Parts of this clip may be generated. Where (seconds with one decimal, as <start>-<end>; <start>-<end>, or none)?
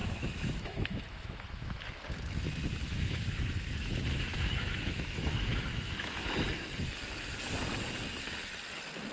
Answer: 0.0-1.9; 2.8-6.1